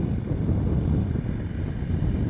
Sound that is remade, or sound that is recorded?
recorded